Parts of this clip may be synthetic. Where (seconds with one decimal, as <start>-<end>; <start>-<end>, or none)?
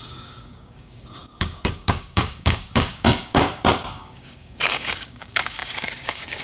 0.0-6.4